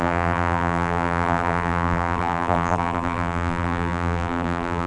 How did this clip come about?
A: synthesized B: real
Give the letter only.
A